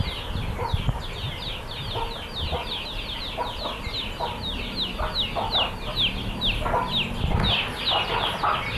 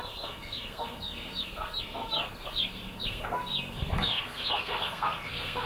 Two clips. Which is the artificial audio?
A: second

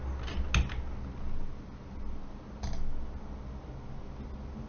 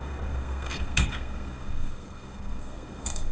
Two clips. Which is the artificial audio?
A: second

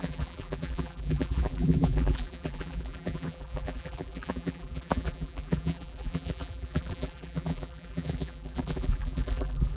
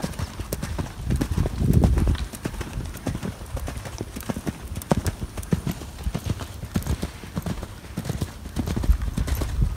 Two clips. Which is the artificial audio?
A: first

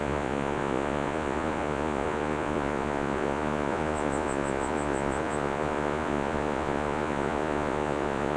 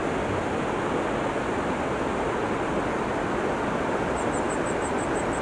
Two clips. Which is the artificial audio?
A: first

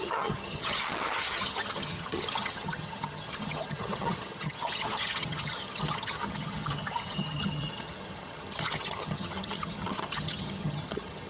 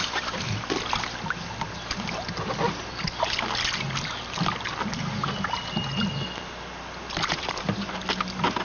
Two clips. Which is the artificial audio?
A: first